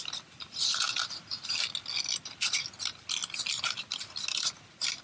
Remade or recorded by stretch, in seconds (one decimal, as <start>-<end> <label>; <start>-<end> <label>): 0.0-5.0 recorded